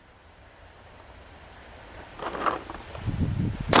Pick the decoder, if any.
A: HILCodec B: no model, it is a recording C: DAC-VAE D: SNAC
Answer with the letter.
B